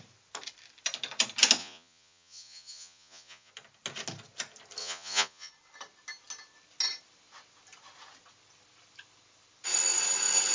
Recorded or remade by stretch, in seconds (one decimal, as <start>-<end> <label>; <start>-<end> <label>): 0.0-1.6 recorded; 1.6-3.5 remade; 3.5-4.8 recorded; 4.8-5.5 remade; 5.5-10.5 recorded